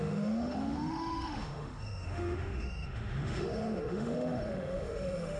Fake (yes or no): yes